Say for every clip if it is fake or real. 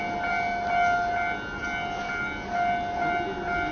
real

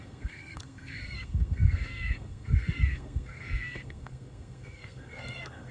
fake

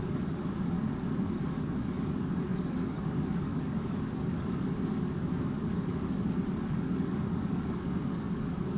fake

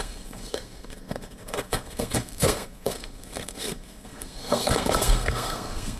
fake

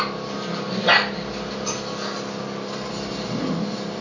real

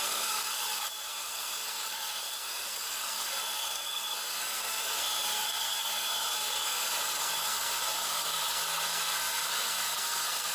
fake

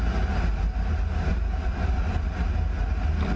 real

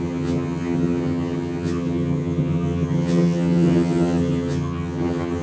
fake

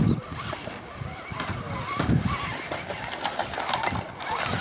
real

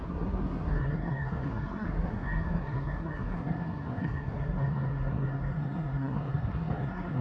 fake